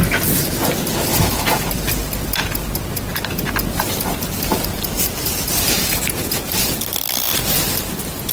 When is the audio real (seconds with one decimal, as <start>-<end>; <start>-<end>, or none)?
0.0-1.1; 1.7-8.3